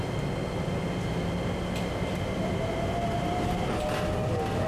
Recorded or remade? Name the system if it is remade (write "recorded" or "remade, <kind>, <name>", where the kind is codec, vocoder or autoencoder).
recorded